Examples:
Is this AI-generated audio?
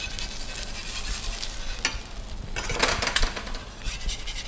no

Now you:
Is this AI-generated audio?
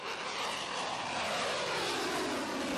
no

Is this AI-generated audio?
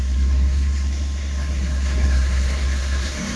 yes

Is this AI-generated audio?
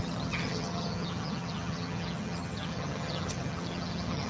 yes